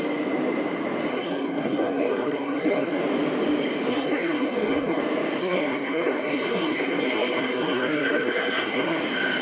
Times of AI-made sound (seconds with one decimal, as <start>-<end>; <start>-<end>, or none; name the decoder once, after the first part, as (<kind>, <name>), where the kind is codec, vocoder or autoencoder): 1.1-3.0 (codec, SNAC); 3.9-5.0; 5.4-9.0